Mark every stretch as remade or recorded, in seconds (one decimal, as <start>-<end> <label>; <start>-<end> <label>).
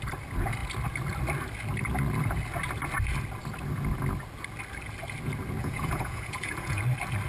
0.0-5.6 recorded; 5.6-6.8 remade; 6.8-7.3 recorded